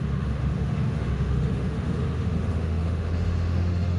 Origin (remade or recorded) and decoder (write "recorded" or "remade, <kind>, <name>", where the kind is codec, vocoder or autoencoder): remade, autoencoder, DAC-VAE